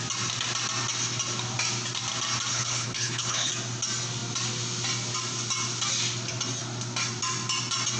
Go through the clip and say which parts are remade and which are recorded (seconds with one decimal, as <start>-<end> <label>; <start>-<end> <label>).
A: 0.0-2.5 recorded; 2.5-3.5 remade; 3.5-8.0 recorded